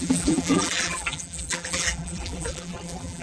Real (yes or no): no